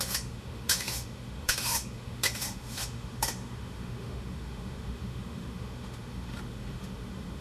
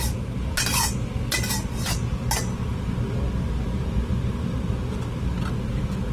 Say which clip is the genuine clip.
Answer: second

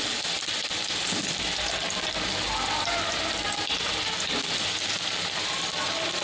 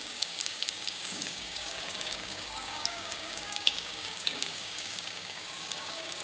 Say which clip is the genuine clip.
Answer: first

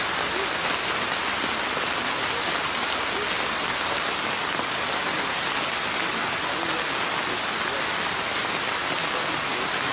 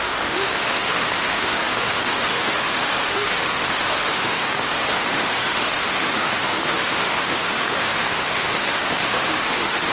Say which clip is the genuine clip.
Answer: first